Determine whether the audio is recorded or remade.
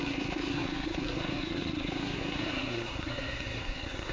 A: remade